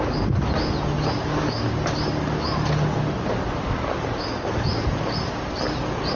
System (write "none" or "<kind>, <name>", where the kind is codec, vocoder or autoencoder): none